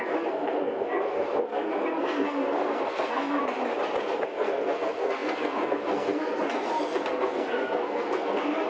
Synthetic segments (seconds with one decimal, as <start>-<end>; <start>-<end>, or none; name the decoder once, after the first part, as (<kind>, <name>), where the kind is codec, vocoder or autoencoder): 0.0-3.4 (codec, SNAC); 4.0-8.7